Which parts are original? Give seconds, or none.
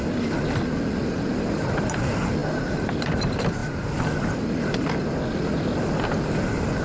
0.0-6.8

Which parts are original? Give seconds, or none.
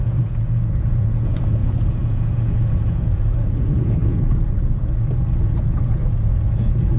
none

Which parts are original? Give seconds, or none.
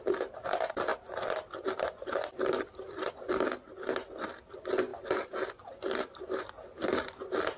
0.0-0.9; 3.1-4.9; 6.4-7.6